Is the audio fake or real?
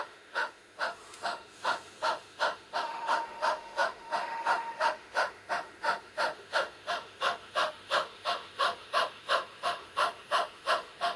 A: fake